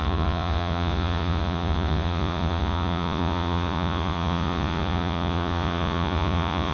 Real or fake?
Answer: fake